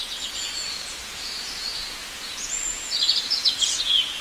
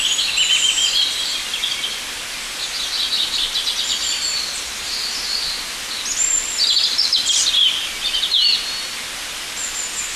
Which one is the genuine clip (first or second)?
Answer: second